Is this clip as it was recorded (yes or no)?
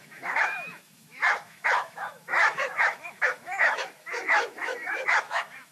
no